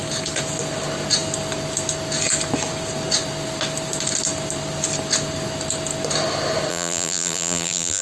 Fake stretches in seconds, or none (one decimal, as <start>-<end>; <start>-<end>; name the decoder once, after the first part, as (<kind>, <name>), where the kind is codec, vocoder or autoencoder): 6.7-8.0 (vocoder, BigVGAN v2)